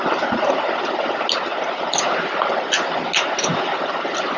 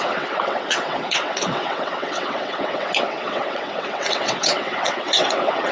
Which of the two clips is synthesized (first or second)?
second